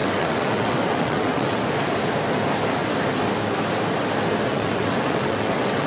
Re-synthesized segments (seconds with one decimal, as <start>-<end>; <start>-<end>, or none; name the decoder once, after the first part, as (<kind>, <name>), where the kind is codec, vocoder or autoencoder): 0.0-1.6 (vocoder, WaveNeXt); 4.5-5.9